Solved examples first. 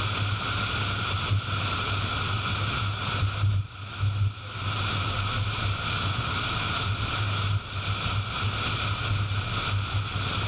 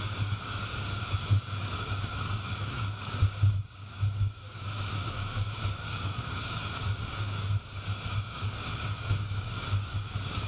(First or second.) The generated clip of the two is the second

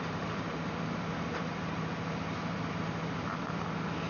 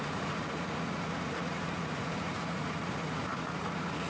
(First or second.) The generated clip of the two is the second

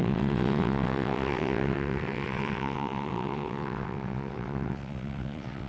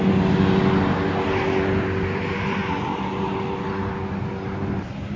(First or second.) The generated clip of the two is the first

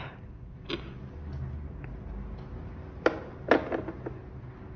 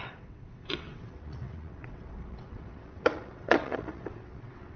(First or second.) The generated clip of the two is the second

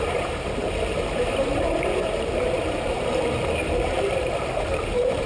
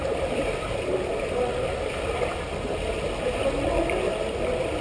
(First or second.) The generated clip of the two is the first